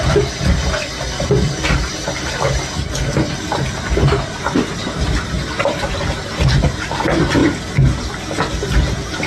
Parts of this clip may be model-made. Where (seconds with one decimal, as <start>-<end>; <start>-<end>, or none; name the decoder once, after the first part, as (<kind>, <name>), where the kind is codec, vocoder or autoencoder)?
4.8-6.0 (vocoder, BigVGAN v2)